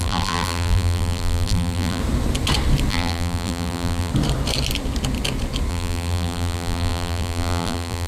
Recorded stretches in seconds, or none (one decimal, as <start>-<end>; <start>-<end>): 2.0-2.9; 4.1-5.7